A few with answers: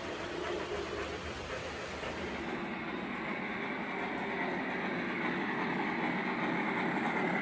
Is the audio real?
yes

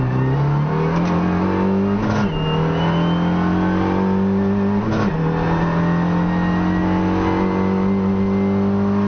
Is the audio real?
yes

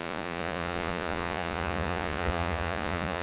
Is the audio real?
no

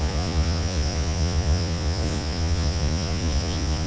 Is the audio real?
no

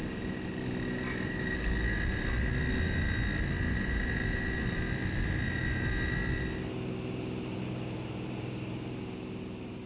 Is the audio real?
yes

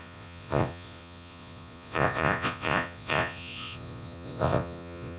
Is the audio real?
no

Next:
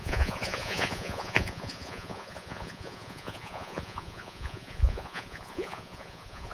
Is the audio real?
no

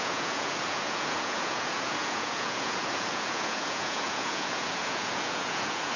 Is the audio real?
no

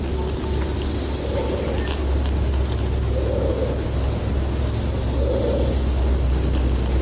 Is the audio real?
yes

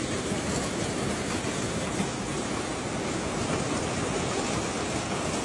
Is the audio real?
yes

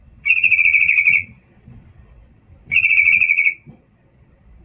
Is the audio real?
no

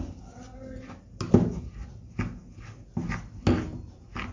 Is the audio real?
yes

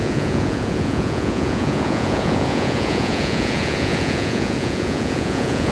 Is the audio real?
no